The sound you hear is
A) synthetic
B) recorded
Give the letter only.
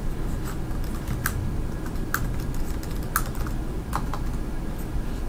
B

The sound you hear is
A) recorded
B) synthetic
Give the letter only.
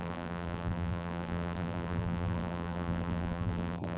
B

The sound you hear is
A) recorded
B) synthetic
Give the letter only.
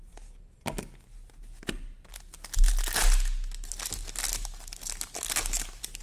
A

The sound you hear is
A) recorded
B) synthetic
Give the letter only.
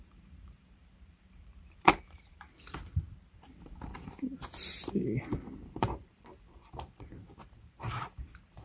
B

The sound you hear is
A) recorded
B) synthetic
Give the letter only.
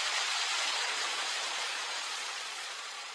B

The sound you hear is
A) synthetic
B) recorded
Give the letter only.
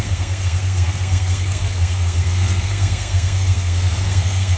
A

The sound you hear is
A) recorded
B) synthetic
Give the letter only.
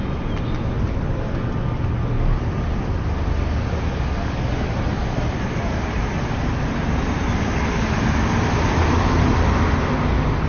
A